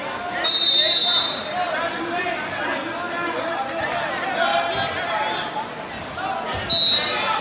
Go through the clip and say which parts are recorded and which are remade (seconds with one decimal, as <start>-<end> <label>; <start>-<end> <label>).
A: 0.0-7.4 recorded